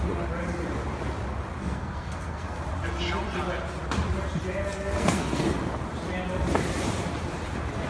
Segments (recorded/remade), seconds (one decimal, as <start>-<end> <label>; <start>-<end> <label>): 0.0-1.6 recorded; 1.6-2.6 remade; 2.6-4.6 recorded; 4.6-5.4 remade; 5.4-7.9 recorded